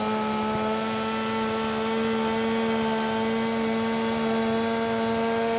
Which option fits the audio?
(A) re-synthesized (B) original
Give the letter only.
B